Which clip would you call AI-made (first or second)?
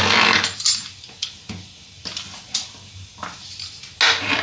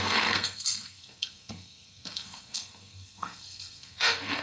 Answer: second